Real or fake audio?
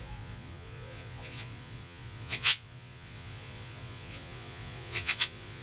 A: fake